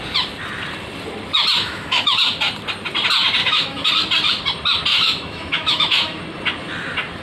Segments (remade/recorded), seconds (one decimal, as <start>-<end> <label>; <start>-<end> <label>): 0.0-1.6 recorded; 1.6-2.2 remade; 2.2-3.4 recorded; 3.4-3.9 remade; 3.9-4.9 recorded; 4.9-6.2 remade; 6.2-7.2 recorded